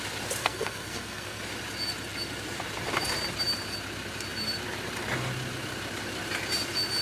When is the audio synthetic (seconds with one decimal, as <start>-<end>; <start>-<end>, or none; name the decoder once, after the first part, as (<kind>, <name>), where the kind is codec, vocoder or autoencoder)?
0.4-1.4 (codec, SNAC)